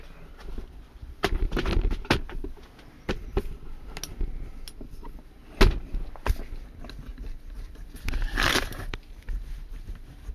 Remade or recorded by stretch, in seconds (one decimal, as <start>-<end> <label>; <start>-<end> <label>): 0.0-1.0 recorded; 1.0-1.7 remade; 1.7-7.1 recorded; 7.1-10.3 remade